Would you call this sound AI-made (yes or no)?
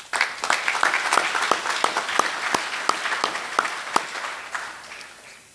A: no